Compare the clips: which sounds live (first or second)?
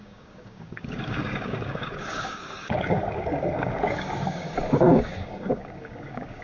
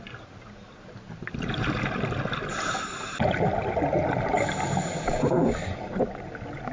second